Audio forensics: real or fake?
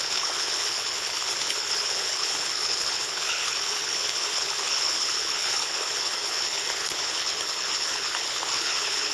fake